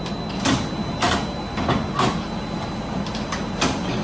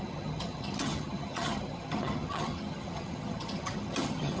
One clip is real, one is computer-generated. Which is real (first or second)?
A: first